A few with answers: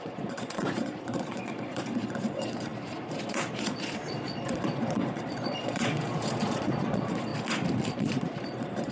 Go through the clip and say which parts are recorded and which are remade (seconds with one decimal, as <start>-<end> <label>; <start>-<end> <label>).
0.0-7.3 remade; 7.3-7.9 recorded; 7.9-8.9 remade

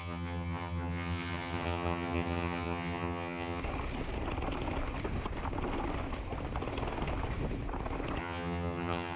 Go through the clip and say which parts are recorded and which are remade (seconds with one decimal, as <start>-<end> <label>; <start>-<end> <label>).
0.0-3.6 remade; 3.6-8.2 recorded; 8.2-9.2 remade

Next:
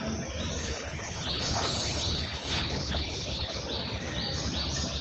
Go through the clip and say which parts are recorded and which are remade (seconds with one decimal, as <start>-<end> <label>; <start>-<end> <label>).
0.0-0.6 recorded; 0.6-3.6 remade; 3.6-5.0 recorded

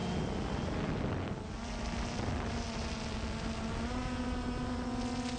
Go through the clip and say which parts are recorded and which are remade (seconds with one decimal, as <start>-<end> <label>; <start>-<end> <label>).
0.0-5.4 recorded

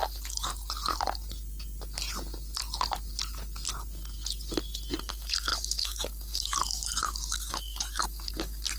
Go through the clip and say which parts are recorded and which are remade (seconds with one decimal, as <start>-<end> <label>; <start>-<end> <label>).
0.0-5.0 recorded; 5.0-8.8 remade

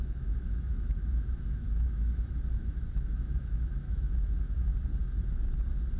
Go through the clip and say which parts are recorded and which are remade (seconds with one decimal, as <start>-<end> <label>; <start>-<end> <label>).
0.0-4.7 remade; 4.7-6.0 recorded

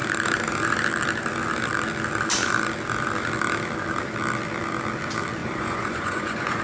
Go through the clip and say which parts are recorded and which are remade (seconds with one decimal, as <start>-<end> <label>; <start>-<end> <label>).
0.0-5.4 recorded; 5.4-6.6 remade